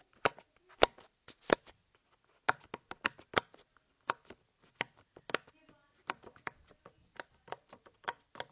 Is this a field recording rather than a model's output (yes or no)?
yes